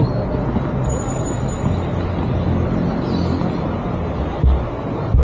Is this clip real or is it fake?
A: real